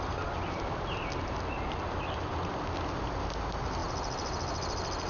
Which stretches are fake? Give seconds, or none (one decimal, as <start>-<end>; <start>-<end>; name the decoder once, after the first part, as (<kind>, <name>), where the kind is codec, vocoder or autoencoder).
none